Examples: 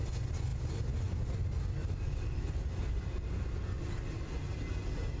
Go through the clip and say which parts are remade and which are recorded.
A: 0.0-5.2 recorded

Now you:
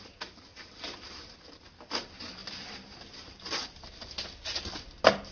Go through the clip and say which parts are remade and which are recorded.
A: 0.0-0.5 recorded; 0.5-1.7 remade; 1.7-2.4 recorded; 2.4-3.8 remade; 3.8-5.3 recorded

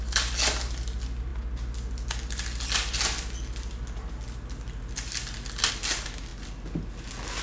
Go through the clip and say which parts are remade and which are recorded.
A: 0.0-7.4 recorded

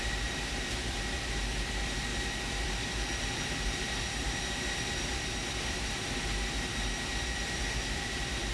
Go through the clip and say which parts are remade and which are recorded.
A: 0.0-8.5 remade

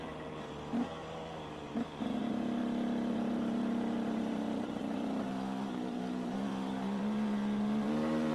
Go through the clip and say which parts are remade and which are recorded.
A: 0.0-2.6 remade; 2.6-3.1 recorded; 3.1-8.3 remade

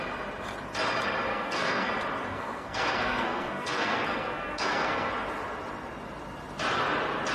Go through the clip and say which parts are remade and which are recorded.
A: 0.0-1.3 recorded; 1.3-1.9 remade; 1.9-2.3 recorded; 2.3-5.1 remade; 5.1-7.3 recorded

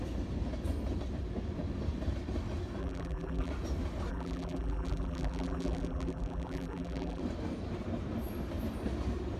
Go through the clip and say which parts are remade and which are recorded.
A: 0.0-2.8 recorded; 2.8-3.5 remade; 3.5-4.1 recorded; 4.1-7.2 remade; 7.2-9.4 recorded

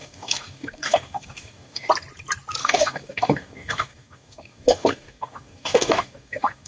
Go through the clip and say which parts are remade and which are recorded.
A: 0.0-1.9 remade; 1.9-2.6 recorded; 2.6-6.7 remade